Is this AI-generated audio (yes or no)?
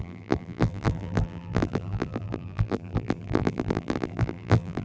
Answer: yes